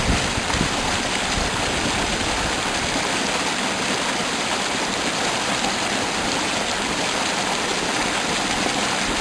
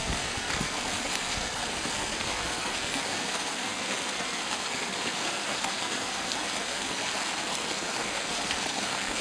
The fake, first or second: second